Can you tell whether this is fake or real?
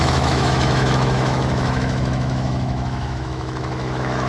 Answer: fake